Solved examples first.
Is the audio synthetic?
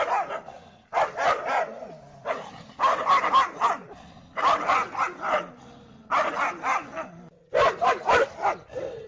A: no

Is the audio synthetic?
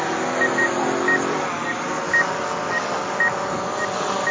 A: no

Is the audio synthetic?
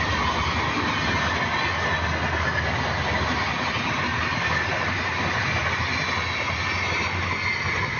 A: no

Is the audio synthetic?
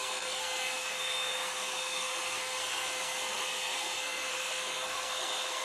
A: yes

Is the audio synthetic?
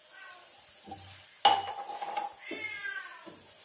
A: no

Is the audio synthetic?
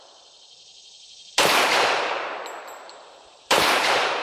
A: yes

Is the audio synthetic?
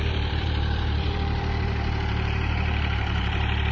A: yes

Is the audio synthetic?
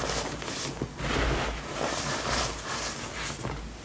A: no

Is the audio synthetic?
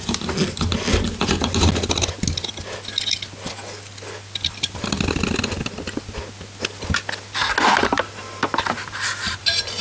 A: no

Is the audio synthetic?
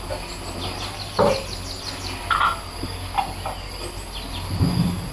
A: no